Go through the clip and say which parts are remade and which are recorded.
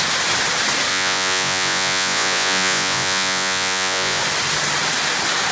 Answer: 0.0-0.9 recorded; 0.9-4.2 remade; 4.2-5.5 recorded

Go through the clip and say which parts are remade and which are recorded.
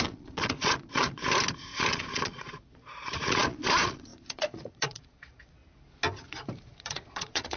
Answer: 0.0-1.2 remade; 1.2-1.9 recorded; 1.9-5.6 remade; 5.6-6.7 recorded; 6.7-7.6 remade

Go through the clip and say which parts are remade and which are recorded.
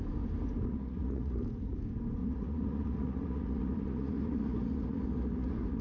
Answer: 0.0-0.7 recorded; 0.7-1.4 remade; 1.4-2.2 recorded; 2.2-5.8 remade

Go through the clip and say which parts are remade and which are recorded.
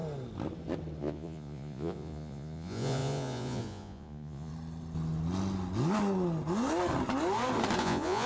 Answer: 0.0-1.0 recorded; 1.0-4.5 remade; 4.5-7.8 recorded; 7.8-8.3 remade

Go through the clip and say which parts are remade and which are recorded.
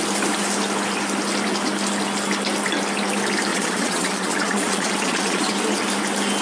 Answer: 0.0-3.5 recorded; 3.5-5.5 remade; 5.5-6.4 recorded